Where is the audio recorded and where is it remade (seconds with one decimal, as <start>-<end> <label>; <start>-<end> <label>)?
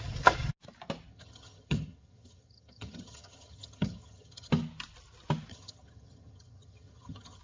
0.0-1.1 recorded; 1.1-4.5 remade; 4.5-5.5 recorded; 5.5-7.4 remade